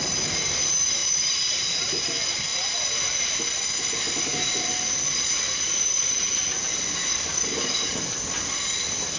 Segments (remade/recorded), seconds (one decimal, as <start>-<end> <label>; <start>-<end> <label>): 0.0-7.1 recorded; 7.1-8.0 remade; 8.0-9.2 recorded